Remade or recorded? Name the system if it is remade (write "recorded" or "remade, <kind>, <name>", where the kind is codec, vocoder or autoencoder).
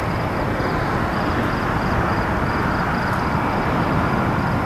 recorded